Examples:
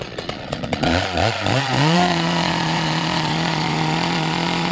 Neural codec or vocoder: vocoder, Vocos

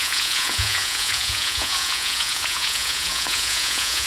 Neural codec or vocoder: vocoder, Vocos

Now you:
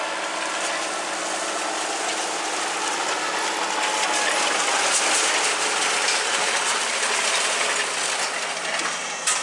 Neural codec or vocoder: none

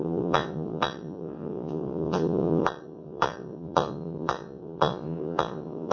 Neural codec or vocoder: vocoder, Vocos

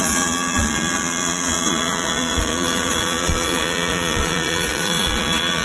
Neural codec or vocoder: vocoder, Vocos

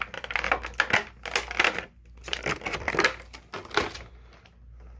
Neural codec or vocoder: none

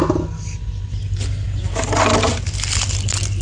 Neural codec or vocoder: none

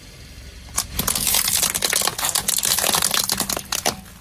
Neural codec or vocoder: none